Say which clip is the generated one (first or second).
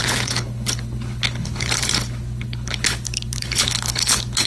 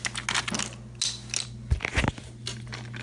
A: first